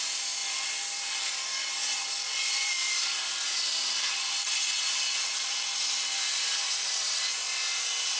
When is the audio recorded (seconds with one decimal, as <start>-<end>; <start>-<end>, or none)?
0.0-0.4; 3.1-8.2

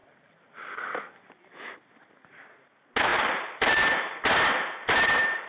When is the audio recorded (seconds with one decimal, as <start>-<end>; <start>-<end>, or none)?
0.8-3.1; 4.2-5.5

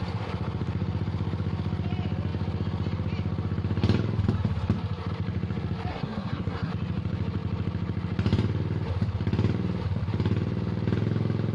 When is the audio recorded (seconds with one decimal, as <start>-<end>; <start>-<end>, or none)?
0.0-5.9; 6.7-11.5

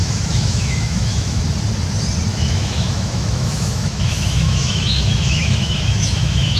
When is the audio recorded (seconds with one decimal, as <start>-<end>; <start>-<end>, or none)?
1.4-2.3

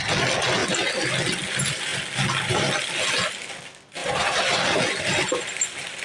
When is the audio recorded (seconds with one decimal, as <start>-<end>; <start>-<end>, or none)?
0.0-4.0; 4.6-6.0

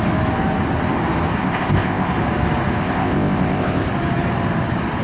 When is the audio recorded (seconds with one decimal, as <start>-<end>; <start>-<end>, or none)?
0.0-1.4; 2.1-2.8; 3.9-5.0